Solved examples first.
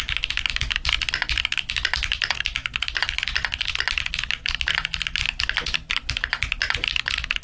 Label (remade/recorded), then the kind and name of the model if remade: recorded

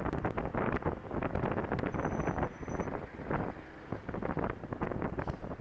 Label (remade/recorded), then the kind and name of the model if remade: recorded